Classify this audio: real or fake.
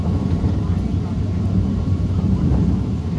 fake